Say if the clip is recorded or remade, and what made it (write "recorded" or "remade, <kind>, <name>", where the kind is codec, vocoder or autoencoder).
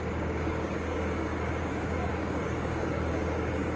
remade, codec, DAC